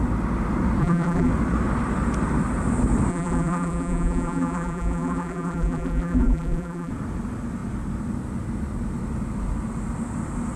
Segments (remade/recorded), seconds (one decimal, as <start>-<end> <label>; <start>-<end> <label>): 0.0-0.8 recorded; 0.8-1.3 remade; 1.3-3.1 recorded; 3.1-6.9 remade; 6.9-10.6 recorded